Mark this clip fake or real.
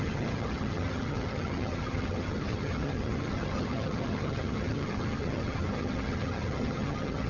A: fake